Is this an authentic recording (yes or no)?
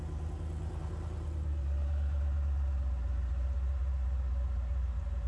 yes